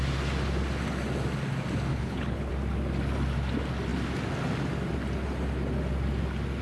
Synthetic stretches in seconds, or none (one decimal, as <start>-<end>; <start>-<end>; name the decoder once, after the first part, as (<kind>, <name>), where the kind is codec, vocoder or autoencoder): 1.9-2.5 (codec, HILCodec)